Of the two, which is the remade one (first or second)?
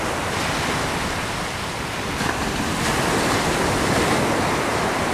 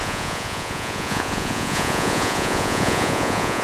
second